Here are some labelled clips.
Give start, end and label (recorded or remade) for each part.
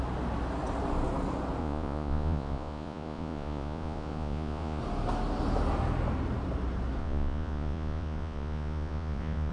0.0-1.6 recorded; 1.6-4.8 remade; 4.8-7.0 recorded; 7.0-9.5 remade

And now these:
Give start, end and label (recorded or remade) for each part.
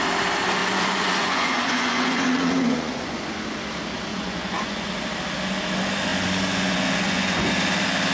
0.0-0.6 recorded; 0.6-3.4 remade; 3.4-4.1 recorded; 4.1-4.9 remade; 4.9-6.1 recorded; 6.1-7.5 remade; 7.5-8.1 recorded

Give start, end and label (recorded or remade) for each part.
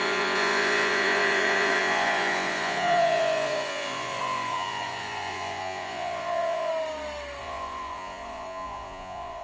0.0-6.7 remade; 6.7-7.4 recorded; 7.4-9.4 remade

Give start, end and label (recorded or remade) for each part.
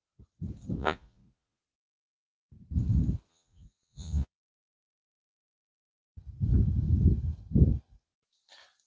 0.0-0.8 recorded; 0.8-1.6 remade; 1.6-3.3 recorded; 3.3-4.5 remade; 4.5-8.9 recorded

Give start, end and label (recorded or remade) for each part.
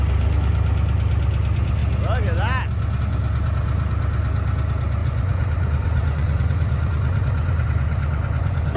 0.0-5.0 recorded; 5.0-8.8 remade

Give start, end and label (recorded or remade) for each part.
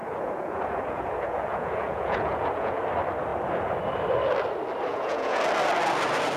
0.0-2.8 remade; 2.8-4.9 recorded; 4.9-5.4 remade; 5.4-6.4 recorded